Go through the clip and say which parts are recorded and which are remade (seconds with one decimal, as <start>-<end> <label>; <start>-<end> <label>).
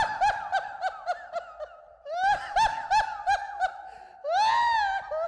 0.0-5.3 recorded